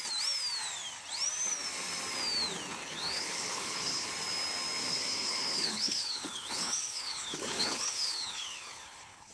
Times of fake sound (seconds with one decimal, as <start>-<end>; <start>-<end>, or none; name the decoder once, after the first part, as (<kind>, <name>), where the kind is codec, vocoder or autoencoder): 2.8-4.1 (codec, HILCodec); 4.8-9.3